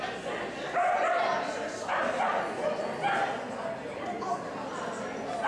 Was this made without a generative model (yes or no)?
yes